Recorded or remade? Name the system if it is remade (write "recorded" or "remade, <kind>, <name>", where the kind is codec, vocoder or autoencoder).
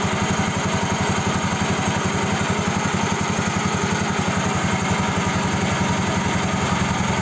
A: recorded